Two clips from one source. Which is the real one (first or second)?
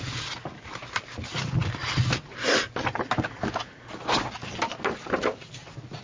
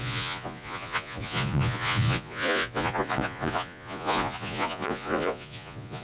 first